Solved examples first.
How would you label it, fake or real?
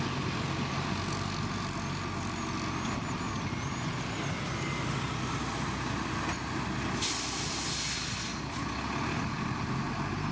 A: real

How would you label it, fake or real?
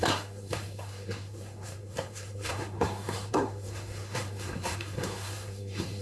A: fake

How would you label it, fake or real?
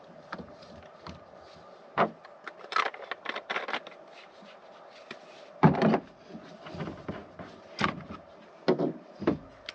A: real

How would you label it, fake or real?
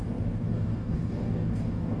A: fake